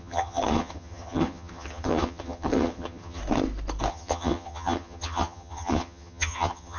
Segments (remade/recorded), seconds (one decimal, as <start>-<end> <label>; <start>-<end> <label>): 0.0-3.2 remade; 3.2-3.9 recorded; 3.9-6.8 remade